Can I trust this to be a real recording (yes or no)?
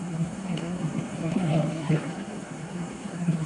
no